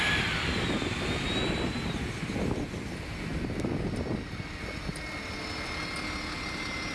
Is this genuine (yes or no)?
yes